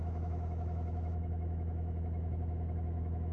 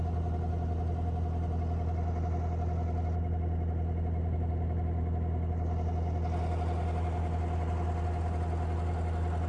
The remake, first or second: first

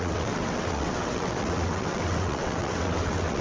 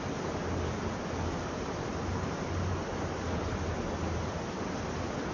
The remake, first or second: first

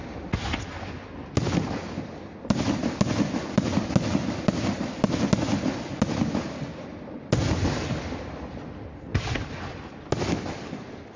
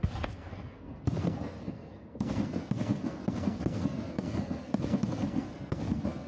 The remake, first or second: second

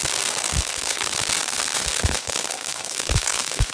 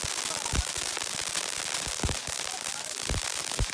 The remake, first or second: first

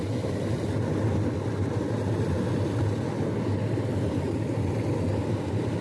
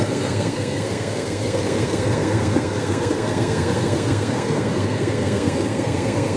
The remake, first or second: second